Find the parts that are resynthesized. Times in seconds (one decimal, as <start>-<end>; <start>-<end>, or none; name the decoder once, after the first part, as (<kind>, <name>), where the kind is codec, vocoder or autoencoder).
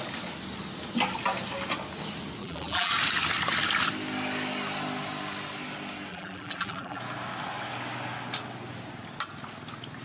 2.4-2.9 (vocoder, BigVGAN v2); 6.1-7.0